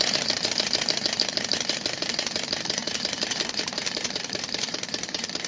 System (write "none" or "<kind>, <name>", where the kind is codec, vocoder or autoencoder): vocoder, BigVGAN v2